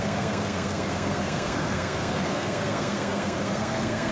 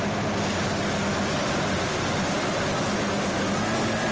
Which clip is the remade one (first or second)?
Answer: first